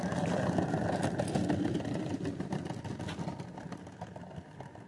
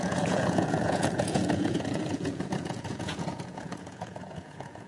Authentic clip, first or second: first